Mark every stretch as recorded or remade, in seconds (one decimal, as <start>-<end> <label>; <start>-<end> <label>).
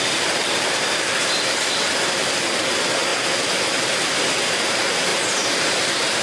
0.0-3.1 remade; 3.1-4.3 recorded; 4.3-6.2 remade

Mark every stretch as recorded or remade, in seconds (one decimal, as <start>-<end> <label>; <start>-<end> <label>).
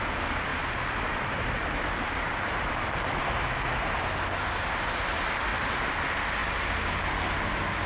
0.0-0.5 recorded; 0.5-2.7 remade; 2.7-5.5 recorded; 5.5-6.0 remade; 6.0-7.9 recorded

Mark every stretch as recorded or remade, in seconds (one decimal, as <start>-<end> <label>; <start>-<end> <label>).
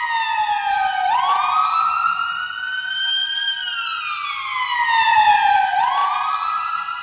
0.0-7.0 recorded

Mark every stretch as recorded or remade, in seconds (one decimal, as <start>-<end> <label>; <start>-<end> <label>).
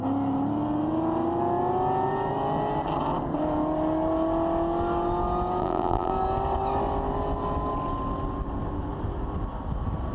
0.0-5.6 recorded; 5.6-6.1 remade; 6.1-10.1 recorded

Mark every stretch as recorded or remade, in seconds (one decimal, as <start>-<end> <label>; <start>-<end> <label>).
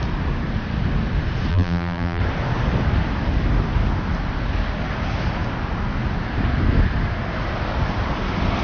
0.0-1.5 recorded; 1.5-2.2 remade; 2.2-8.6 recorded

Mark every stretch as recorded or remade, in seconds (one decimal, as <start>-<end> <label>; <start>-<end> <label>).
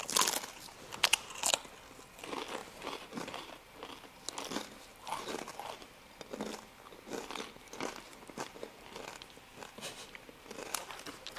0.0-2.6 recorded; 2.6-3.6 remade; 3.6-4.9 recorded; 4.9-5.9 remade; 5.9-8.1 recorded; 8.1-9.0 remade; 9.0-11.4 recorded